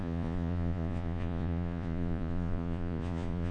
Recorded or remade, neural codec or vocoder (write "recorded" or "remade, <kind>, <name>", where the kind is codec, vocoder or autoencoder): remade, vocoder, Vocos